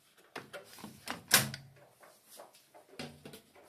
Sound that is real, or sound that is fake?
real